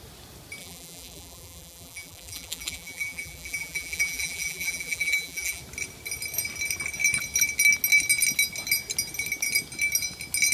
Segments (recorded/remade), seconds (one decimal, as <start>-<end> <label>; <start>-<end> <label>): 0.0-0.6 recorded; 0.6-5.6 remade; 5.6-10.5 recorded